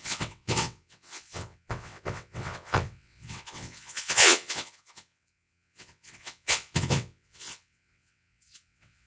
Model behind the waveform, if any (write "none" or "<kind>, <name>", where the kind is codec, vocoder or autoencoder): vocoder, WaveNeXt